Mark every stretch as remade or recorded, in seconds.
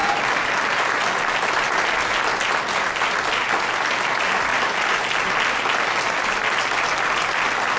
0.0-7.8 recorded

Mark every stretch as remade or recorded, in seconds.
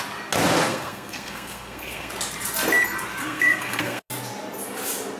0.0-0.7 recorded; 0.7-2.1 remade; 2.1-3.2 recorded; 3.2-4.1 remade; 4.1-5.2 recorded